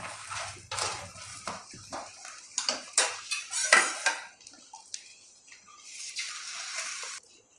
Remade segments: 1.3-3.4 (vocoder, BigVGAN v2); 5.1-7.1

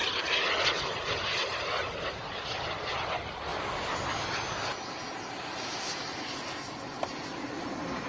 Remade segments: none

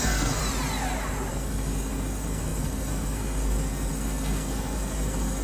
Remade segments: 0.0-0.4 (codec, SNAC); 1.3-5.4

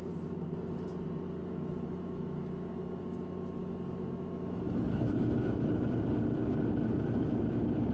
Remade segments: 1.4-3.0 (autoencoder, DAC-VAE); 3.6-5.2